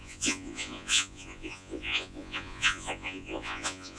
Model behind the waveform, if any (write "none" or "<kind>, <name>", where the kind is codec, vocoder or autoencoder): vocoder, Vocos